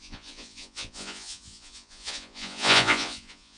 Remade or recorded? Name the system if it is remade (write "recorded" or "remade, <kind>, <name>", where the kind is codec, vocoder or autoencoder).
remade, vocoder, Vocos